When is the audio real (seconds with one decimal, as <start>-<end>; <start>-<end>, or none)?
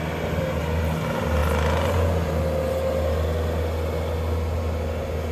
0.0-5.3